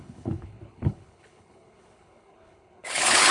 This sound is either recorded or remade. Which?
remade